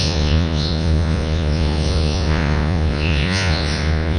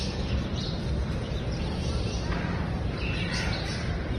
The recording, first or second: second